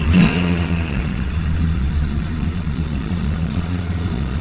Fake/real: fake